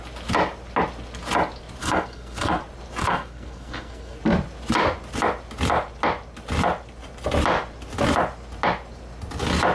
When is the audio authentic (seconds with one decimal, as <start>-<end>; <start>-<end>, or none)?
0.0-1.8; 2.6-3.0; 4.2-9.7